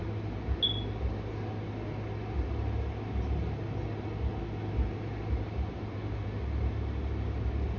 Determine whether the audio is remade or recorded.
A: recorded